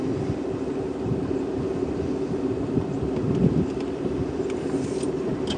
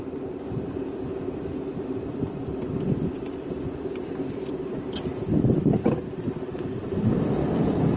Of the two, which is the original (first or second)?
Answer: first